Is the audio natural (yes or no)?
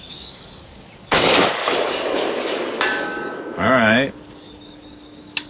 no